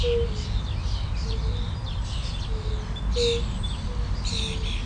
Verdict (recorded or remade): recorded